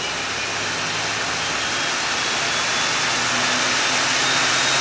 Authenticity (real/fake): real